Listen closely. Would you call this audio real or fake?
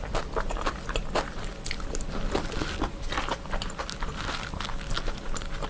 real